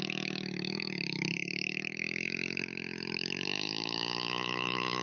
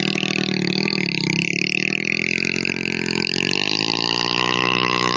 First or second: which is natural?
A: second